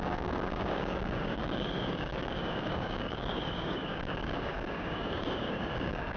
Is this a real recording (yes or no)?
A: no